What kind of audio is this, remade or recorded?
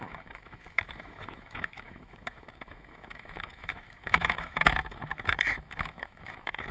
remade